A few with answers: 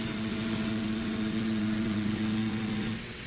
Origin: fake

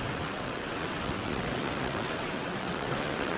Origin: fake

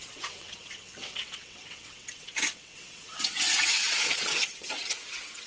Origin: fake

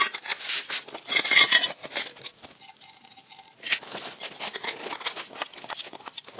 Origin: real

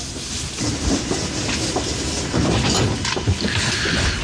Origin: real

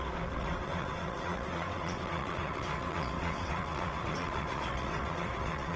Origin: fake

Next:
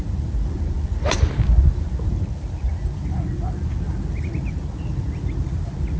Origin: real